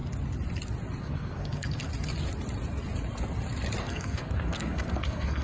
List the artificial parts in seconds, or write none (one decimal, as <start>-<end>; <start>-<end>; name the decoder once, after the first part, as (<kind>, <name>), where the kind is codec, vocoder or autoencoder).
1.0-1.9 (codec, SNAC); 3.8-5.4